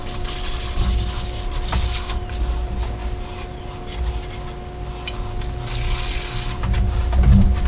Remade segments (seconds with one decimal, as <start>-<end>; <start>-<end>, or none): none